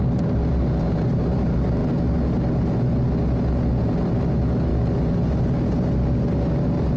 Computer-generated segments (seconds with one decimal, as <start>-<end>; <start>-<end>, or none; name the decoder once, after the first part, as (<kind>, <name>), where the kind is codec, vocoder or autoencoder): none